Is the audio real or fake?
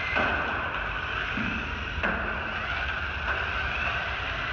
fake